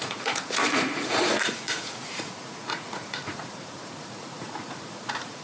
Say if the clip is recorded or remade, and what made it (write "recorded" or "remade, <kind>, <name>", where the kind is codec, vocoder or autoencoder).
remade, vocoder, Vocos